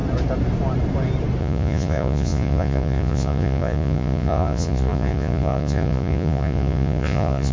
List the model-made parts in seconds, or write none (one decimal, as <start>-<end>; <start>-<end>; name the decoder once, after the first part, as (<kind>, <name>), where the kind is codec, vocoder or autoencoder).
1.4-7.5 (vocoder, Vocos)